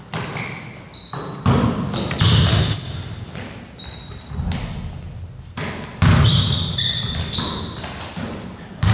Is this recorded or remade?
recorded